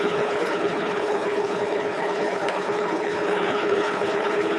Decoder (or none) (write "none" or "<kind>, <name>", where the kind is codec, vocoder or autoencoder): codec, HILCodec